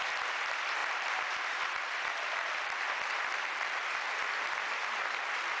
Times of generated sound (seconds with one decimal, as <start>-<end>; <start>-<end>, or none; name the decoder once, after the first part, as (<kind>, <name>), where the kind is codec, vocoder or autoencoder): 0.8-4.2 (vocoder, BigVGAN v2)